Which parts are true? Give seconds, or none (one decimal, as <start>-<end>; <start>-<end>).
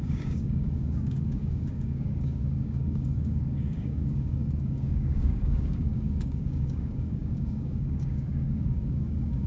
none